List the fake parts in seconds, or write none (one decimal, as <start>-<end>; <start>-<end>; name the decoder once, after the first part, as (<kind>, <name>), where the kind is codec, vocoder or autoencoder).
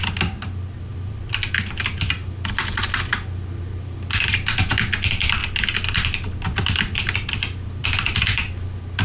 0.9-1.4 (vocoder, BigVGAN v2); 5.4-8.2